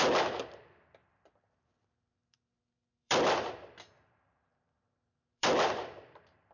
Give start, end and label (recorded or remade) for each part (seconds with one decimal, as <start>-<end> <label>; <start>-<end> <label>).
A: 0.0-1.0 recorded; 1.0-3.5 remade; 3.5-4.5 recorded; 4.5-6.5 remade